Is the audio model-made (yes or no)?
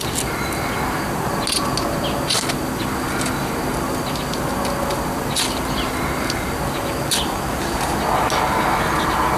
no